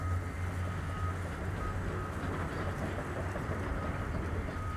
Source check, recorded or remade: recorded